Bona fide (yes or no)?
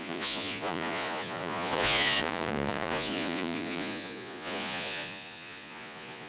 no